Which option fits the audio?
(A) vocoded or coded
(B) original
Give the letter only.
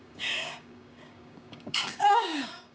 A